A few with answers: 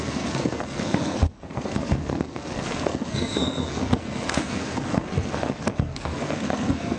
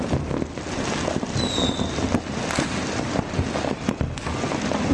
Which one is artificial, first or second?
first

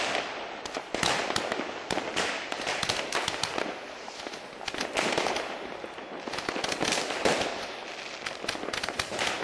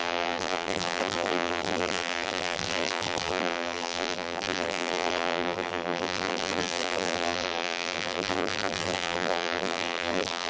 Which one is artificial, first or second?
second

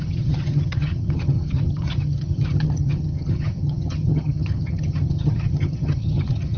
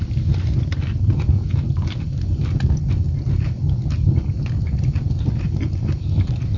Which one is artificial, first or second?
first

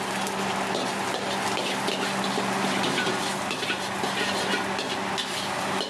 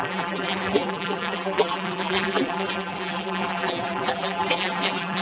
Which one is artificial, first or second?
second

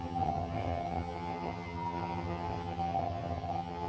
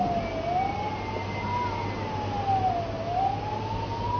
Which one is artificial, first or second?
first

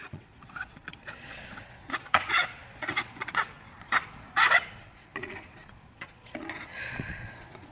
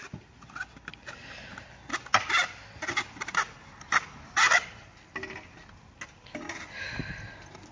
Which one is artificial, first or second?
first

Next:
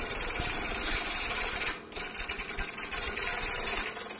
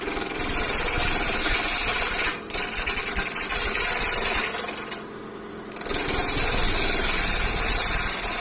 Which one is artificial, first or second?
first